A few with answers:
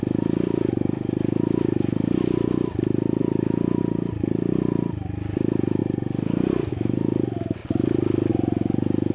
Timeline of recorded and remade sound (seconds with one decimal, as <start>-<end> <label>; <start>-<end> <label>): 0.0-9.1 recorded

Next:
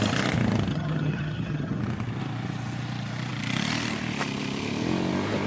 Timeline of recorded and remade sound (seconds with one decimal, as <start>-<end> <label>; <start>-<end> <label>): 0.0-0.7 recorded; 0.7-1.8 remade; 1.8-5.5 recorded

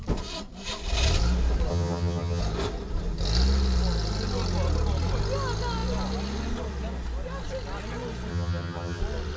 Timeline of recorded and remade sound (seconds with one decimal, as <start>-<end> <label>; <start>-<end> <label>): 0.0-1.7 recorded; 1.7-2.4 remade; 2.4-8.3 recorded; 8.3-9.0 remade; 9.0-9.4 recorded

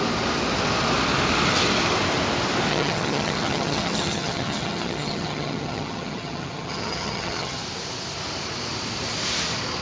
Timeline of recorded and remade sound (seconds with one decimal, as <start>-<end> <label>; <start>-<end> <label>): 0.0-2.7 recorded; 2.7-7.6 remade; 7.6-9.8 recorded

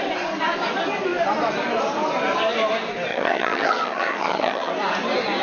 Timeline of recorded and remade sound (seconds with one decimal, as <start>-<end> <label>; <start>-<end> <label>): 0.0-3.1 recorded; 3.1-4.7 remade; 4.7-5.4 recorded

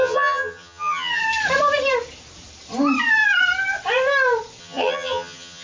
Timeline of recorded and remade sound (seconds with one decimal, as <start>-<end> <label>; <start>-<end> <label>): 0.0-1.2 remade; 1.2-4.6 recorded; 4.6-5.6 remade

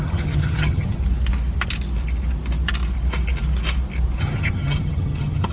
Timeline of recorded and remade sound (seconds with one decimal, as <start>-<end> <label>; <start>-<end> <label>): 0.0-1.0 remade; 1.0-4.2 recorded; 4.2-5.5 remade

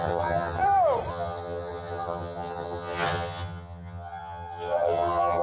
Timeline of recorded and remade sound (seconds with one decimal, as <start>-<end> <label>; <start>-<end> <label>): 0.0-0.6 remade; 0.6-1.1 recorded; 1.1-5.4 remade